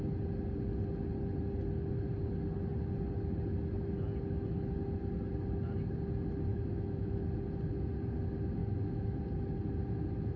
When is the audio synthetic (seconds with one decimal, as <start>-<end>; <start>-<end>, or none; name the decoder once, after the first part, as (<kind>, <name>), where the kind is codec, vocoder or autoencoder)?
6.5-7.2 (autoencoder, DAC-VAE); 8.6-9.2